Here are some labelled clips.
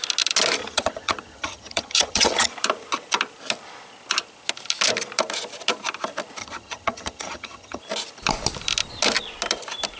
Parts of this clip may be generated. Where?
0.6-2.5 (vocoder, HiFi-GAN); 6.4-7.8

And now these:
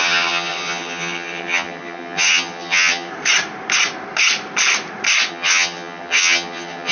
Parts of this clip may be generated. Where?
0.0-3.1 (vocoder, HiFi-GAN); 5.3-6.9